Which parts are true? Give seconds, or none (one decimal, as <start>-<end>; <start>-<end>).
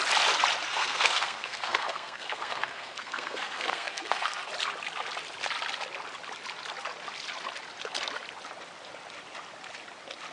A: 0.0-0.7; 4.5-10.3